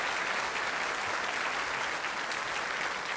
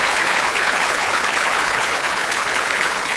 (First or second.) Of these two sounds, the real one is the first